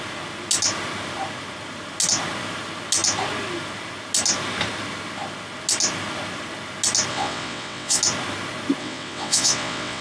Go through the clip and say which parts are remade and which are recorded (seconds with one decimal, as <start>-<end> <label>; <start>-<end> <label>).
0.0-7.1 recorded; 7.1-8.0 remade; 8.0-8.8 recorded; 8.8-10.0 remade